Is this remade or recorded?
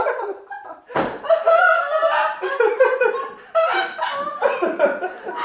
remade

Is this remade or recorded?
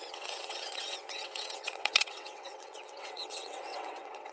remade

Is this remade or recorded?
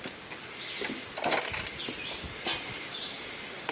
recorded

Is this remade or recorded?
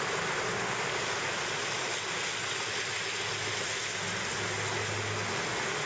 recorded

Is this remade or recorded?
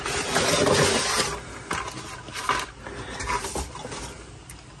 recorded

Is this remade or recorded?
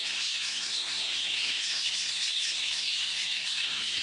remade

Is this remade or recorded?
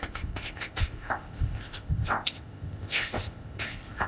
remade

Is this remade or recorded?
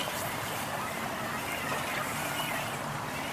recorded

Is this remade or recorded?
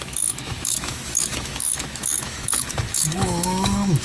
remade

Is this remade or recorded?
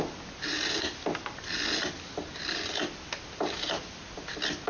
recorded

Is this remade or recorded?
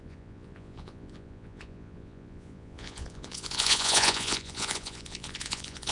remade